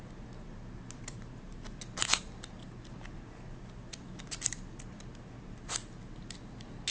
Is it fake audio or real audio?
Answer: real